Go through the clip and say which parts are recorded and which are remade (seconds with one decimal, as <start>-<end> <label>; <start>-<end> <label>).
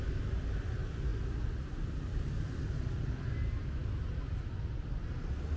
0.0-5.6 recorded